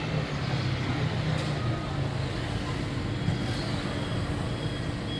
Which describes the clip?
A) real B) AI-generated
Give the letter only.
A